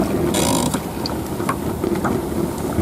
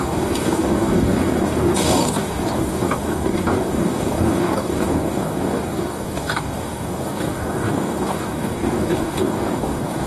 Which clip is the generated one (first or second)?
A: second